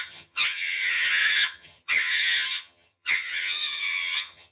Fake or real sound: fake